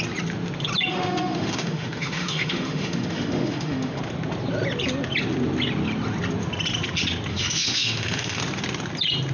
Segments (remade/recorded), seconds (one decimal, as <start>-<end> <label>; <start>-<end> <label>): 0.0-0.9 recorded; 0.9-4.0 remade; 4.0-7.3 recorded; 7.3-8.4 remade; 8.4-9.3 recorded